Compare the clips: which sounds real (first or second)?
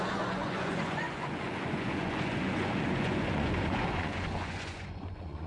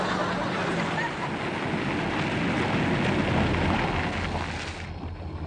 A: second